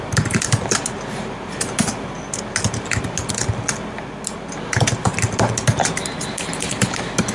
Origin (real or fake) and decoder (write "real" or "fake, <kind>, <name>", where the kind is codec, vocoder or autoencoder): real